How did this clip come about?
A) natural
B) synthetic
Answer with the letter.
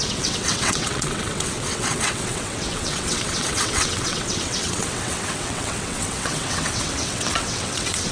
B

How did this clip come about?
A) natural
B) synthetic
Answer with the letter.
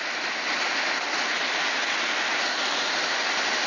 A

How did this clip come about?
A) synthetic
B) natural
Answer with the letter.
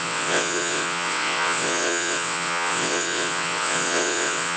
A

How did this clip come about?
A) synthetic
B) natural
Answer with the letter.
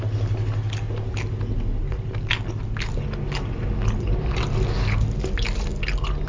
B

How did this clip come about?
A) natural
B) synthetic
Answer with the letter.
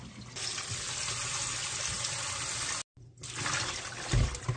A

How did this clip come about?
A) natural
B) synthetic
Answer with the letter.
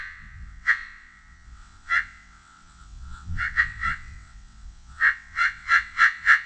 B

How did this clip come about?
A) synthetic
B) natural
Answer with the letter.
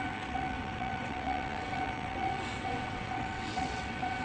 A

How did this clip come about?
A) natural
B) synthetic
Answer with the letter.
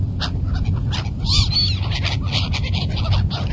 A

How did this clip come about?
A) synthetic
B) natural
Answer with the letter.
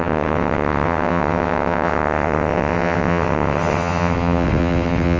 A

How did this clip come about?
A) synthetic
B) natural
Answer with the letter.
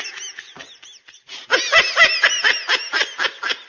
B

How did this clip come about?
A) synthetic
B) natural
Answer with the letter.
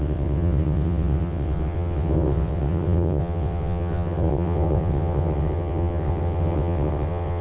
A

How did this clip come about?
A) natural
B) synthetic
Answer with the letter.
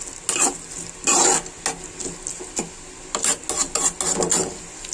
A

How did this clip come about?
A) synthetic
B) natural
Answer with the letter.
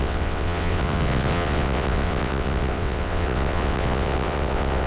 A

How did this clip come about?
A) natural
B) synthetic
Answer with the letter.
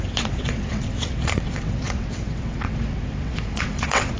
B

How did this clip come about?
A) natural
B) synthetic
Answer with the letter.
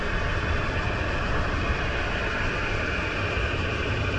A